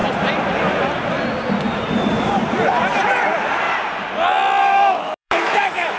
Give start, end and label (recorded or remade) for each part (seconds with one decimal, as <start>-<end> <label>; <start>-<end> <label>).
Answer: 0.0-4.6 recorded; 4.6-6.0 remade